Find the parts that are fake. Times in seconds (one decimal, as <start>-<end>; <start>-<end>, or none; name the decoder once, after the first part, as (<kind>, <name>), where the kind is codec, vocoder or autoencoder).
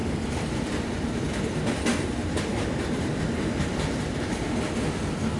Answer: none